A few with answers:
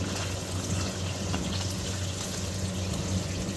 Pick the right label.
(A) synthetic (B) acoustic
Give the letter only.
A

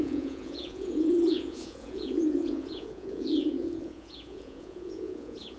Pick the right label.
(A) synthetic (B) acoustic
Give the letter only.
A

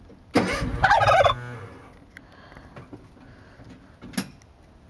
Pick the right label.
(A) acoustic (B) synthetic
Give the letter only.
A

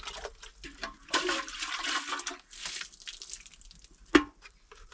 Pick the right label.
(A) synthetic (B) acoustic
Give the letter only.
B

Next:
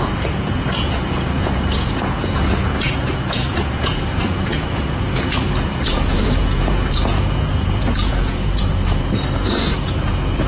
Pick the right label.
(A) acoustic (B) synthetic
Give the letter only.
B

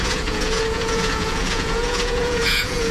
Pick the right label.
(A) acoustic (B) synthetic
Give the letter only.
B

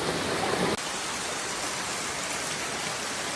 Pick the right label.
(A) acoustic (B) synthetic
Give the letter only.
A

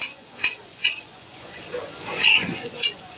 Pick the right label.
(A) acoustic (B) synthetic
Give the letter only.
B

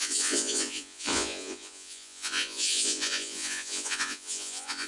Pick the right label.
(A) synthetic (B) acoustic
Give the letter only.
A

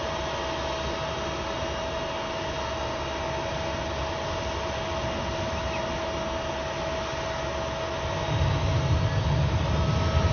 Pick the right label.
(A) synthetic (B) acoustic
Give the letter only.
B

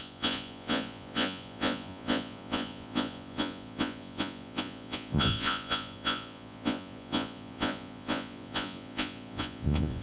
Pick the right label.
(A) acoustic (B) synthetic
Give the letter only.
B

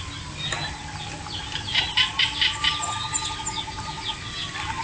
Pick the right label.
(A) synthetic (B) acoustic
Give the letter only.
B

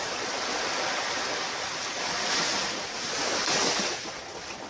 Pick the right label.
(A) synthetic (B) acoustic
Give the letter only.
B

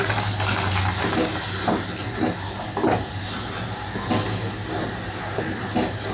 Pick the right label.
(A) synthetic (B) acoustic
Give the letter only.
B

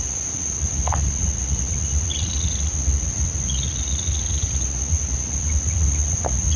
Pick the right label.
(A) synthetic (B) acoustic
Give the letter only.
A